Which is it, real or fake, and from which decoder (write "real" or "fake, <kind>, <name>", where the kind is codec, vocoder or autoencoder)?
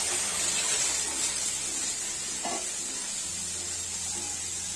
real